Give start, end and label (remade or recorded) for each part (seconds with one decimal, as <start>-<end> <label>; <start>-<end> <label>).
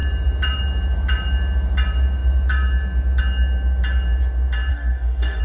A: 0.0-4.7 recorded; 4.7-5.4 remade